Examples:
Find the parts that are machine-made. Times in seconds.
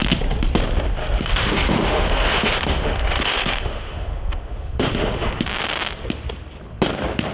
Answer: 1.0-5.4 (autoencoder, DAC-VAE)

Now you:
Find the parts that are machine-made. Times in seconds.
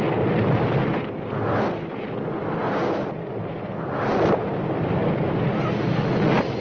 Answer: none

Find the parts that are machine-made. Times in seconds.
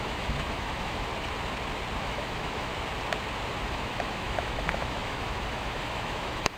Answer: 0.0-1.1 (autoencoder, DAC-VAE); 2.0-2.7; 3.7-6.6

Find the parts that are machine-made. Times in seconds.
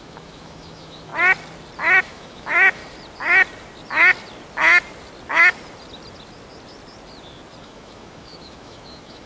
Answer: 0.0-1.1 (autoencoder, DAC-VAE); 2.0-2.8; 7.6-9.3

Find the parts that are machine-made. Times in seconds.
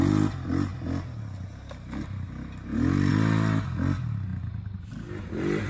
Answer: none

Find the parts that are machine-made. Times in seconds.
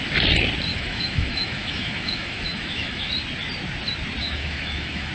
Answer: 0.7-3.1 (autoencoder, DAC-VAE); 4.2-5.1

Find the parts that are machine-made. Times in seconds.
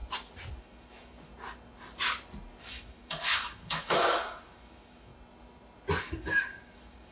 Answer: 0.6-1.3 (autoencoder, DAC-VAE); 2.6-5.1; 6.0-7.1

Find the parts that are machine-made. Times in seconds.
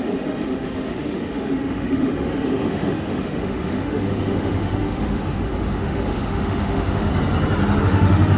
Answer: 0.0-7.1 (autoencoder, DAC-VAE); 7.8-8.4